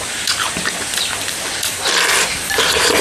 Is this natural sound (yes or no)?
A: no